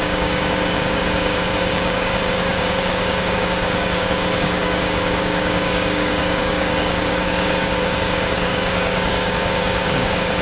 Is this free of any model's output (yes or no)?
no